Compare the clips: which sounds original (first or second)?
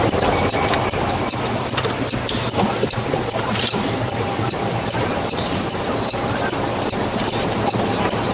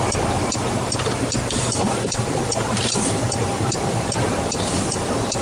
first